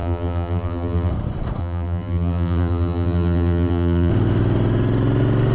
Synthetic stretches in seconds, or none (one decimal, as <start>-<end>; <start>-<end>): 0.0-1.1; 1.6-4.1